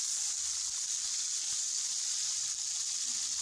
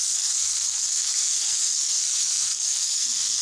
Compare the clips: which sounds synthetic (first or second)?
second